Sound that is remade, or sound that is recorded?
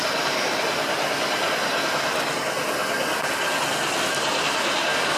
recorded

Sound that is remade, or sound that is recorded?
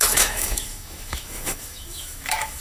remade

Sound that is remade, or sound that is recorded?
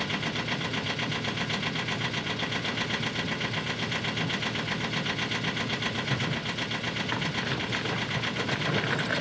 remade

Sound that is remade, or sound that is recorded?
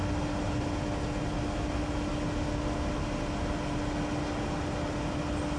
recorded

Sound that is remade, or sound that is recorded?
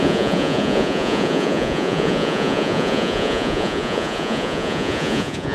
remade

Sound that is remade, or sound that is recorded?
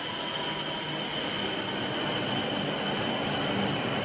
recorded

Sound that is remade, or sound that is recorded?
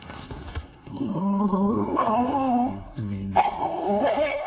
remade